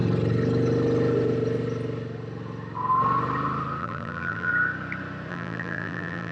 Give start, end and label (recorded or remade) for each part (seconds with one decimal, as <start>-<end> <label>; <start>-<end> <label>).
0.0-3.8 recorded; 3.8-4.5 remade; 4.5-5.3 recorded; 5.3-6.3 remade